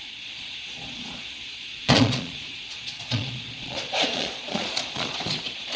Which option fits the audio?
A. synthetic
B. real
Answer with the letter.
A